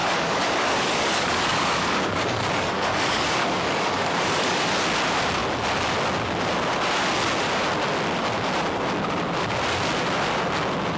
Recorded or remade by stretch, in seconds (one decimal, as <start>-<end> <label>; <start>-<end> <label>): 0.0-4.6 remade; 4.6-11.0 recorded